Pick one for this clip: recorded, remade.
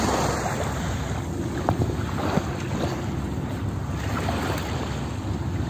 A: recorded